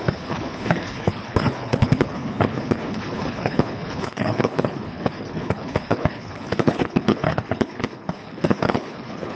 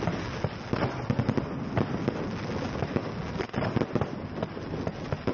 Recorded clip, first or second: second